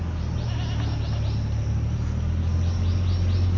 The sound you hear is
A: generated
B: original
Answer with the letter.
B